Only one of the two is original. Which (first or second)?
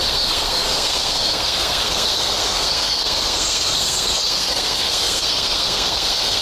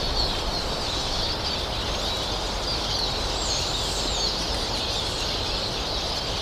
second